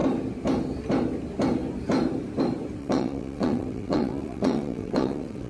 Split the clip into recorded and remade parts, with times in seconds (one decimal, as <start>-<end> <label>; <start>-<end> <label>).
0.0-2.8 recorded; 2.8-5.5 remade